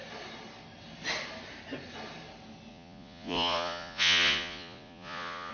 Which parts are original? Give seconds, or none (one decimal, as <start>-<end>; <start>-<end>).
0.0-2.7